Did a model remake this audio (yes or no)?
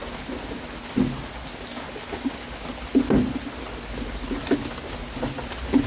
no